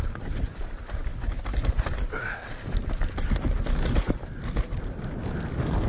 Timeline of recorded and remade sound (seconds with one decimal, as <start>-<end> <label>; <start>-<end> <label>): 0.0-5.9 recorded